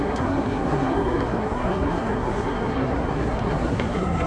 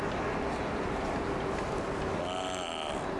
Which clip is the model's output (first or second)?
first